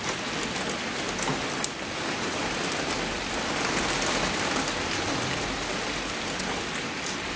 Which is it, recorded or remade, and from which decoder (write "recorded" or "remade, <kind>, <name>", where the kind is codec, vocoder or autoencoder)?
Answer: recorded